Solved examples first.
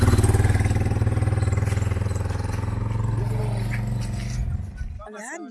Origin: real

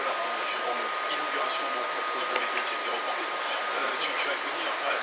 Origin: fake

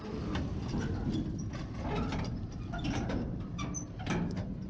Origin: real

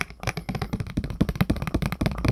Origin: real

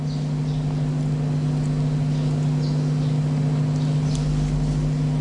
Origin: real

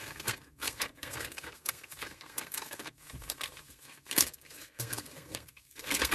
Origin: fake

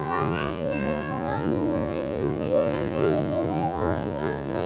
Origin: fake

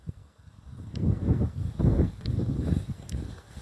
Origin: fake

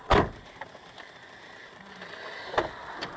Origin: real